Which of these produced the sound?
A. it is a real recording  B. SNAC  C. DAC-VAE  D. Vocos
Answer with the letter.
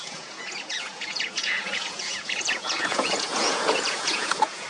D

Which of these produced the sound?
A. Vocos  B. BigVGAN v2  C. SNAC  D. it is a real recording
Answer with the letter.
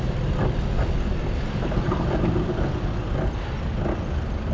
D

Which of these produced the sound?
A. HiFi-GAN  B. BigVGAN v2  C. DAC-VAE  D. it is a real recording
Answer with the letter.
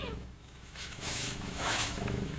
C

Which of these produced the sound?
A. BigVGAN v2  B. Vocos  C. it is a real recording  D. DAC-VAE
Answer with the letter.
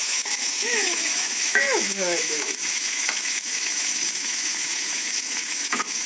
D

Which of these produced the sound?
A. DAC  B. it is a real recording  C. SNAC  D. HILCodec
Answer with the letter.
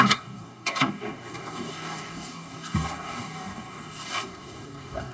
A